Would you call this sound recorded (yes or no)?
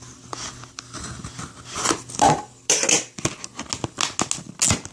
yes